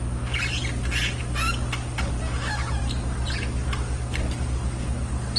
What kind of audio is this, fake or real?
real